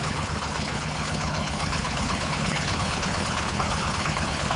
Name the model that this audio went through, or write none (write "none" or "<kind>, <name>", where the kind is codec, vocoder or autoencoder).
codec, HILCodec